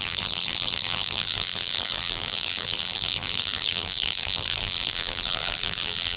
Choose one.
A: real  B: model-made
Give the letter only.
B